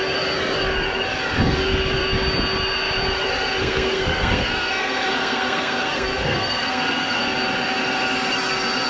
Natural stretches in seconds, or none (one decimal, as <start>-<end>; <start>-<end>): 0.0-3.6; 7.2-8.9